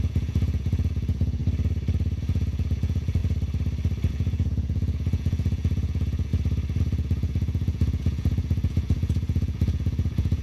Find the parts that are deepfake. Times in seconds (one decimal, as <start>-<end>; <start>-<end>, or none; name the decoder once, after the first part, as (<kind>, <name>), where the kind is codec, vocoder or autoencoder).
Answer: 0.0-1.4 (vocoder, Vocos); 2.2-3.2; 4.1-6.3; 6.8-10.4